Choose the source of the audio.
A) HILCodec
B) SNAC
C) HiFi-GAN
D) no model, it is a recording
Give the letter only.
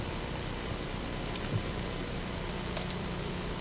D